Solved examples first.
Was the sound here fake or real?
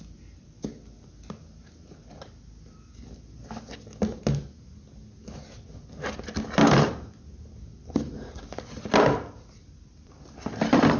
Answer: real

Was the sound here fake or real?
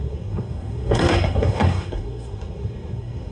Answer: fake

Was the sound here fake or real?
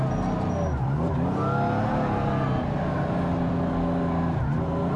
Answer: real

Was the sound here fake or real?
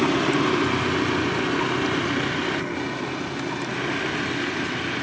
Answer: real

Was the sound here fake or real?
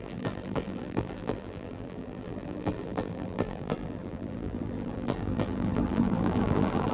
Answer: fake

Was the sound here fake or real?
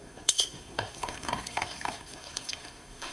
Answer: fake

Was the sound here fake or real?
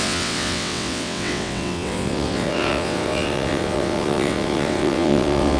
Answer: fake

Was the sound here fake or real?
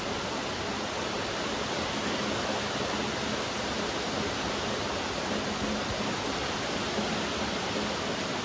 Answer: real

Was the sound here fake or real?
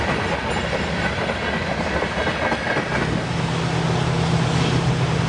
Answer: real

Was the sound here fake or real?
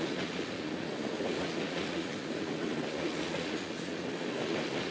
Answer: fake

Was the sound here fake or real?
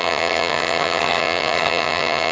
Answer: fake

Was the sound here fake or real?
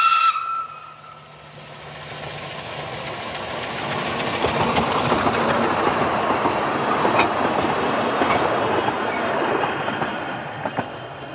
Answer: real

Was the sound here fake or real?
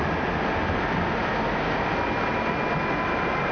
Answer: real